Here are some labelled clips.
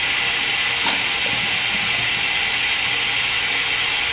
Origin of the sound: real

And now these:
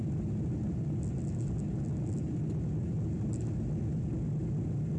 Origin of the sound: real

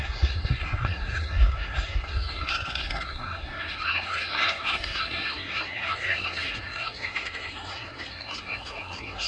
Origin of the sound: fake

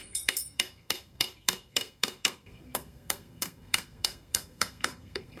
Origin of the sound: fake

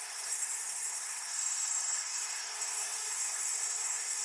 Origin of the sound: fake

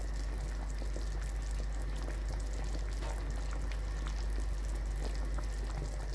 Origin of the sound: real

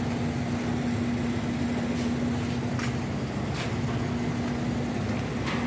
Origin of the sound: real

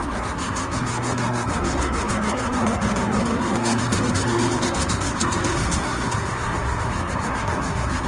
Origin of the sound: fake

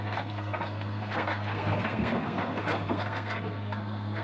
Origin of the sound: fake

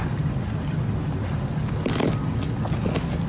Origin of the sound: real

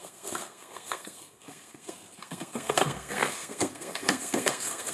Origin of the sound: fake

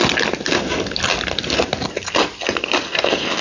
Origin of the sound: real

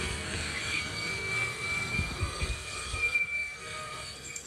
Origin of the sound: fake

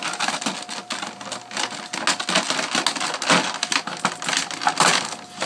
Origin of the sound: real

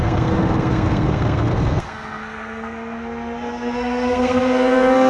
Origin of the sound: fake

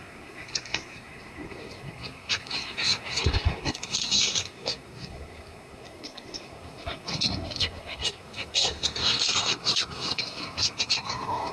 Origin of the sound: fake